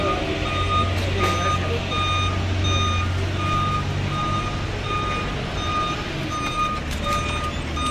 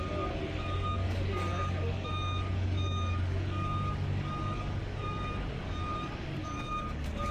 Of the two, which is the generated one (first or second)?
second